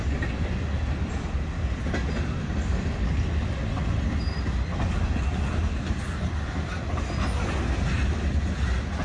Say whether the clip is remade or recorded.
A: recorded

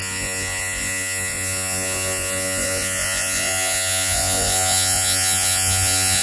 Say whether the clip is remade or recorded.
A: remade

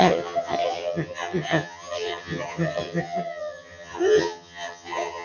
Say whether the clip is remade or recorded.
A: remade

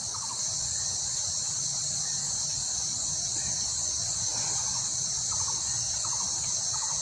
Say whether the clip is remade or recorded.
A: remade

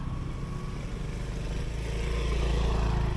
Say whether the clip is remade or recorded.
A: recorded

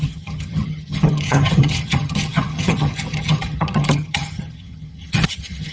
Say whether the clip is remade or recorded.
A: remade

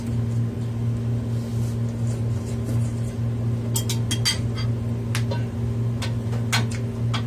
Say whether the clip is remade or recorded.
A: recorded